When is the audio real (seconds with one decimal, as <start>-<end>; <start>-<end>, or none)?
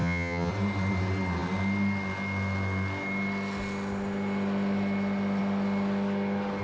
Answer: 0.5-6.6